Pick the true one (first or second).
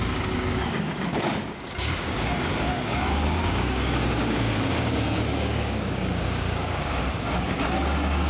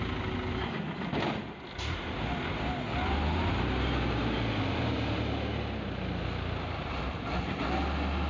second